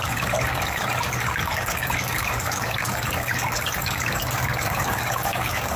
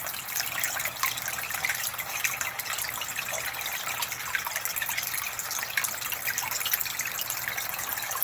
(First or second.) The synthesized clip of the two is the first